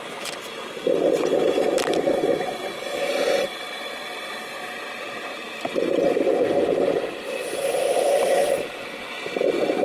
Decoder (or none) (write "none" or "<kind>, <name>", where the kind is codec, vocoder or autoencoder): none